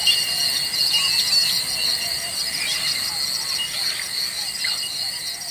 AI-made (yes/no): no